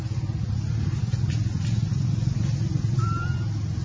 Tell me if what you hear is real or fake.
real